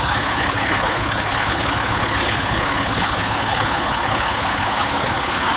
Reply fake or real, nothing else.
fake